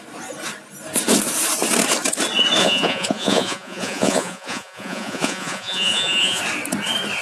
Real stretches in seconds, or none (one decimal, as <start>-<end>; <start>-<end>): 0.0-2.6; 6.4-7.2